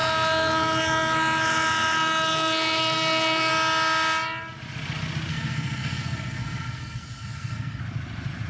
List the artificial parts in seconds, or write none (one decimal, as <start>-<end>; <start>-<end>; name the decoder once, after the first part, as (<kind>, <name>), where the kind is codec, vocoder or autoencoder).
0.0-3.5 (codec, SNAC); 5.3-7.8